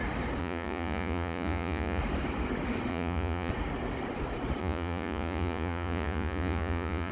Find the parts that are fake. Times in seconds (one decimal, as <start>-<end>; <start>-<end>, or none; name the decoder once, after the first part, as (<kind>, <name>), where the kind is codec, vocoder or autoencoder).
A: 0.4-2.0 (vocoder, Vocos); 2.9-3.5; 4.6-7.1